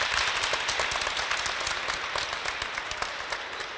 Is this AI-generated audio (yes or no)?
no